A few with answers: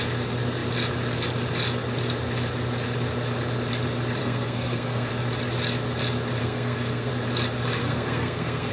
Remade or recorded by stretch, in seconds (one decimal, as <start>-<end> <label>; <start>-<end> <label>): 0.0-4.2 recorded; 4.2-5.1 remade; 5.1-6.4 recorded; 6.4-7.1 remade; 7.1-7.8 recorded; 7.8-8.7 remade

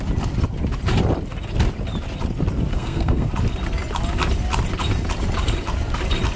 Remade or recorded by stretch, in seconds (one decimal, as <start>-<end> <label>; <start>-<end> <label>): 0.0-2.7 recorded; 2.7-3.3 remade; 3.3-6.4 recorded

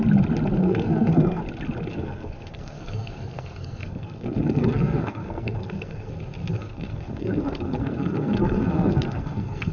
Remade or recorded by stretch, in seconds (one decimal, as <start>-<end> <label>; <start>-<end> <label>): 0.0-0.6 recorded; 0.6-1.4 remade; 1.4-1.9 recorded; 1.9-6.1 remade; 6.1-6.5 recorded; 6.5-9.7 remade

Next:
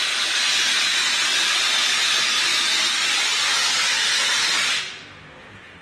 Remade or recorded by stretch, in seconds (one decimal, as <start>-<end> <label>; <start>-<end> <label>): 0.0-5.8 recorded

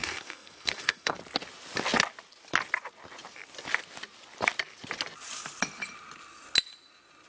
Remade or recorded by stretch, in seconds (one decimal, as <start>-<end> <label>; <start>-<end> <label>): 0.0-1.1 remade; 1.1-7.3 recorded

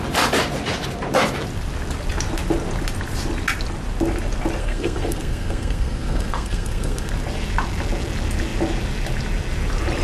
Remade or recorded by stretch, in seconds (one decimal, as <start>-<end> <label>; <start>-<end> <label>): 0.0-4.6 recorded; 4.6-7.1 remade; 7.1-10.0 recorded